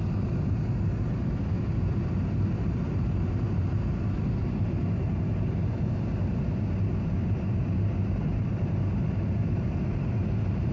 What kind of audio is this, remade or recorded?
recorded